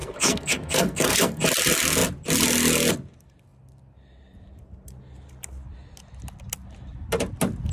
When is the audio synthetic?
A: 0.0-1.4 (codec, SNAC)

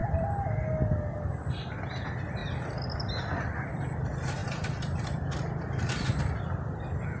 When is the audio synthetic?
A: 2.4-3.8 (vocoder, BigVGAN v2); 4.4-6.2

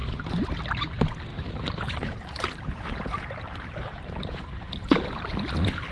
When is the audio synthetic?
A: 0.0-0.6 (vocoder, BigVGAN v2); 1.3-4.7

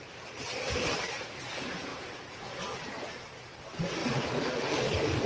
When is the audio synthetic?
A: 1.9-2.4 (vocoder, Vocos)